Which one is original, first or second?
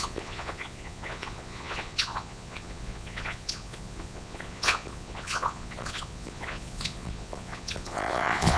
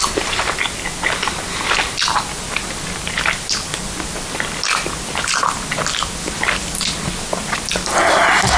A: second